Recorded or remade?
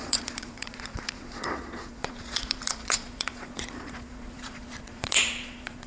remade